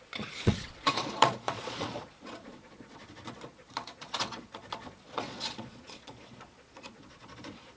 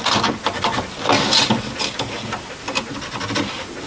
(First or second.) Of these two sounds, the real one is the second